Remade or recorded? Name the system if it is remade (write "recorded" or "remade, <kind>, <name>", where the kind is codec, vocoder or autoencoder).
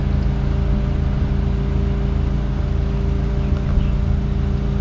recorded